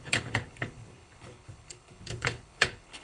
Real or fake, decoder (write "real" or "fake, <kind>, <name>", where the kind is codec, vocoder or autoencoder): fake, codec, HILCodec